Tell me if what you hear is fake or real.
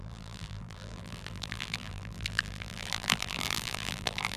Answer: fake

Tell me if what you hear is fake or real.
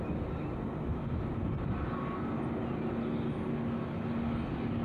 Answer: real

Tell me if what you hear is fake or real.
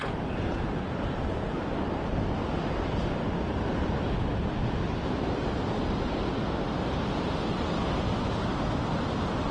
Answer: real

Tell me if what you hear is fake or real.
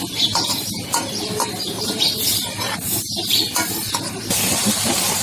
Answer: fake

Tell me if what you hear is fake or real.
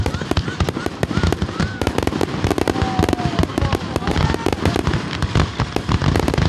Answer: fake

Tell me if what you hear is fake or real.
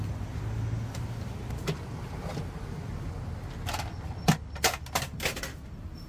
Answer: real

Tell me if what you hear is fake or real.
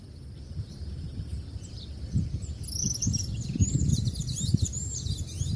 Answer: fake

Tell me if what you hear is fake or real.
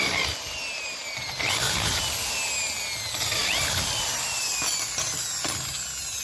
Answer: real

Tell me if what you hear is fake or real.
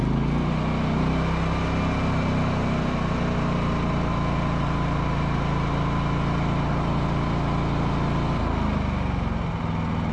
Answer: real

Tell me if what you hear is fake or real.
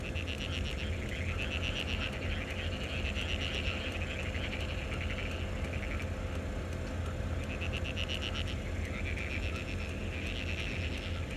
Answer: real